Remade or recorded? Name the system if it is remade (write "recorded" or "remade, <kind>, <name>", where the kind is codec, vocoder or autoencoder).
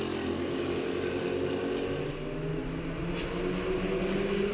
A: recorded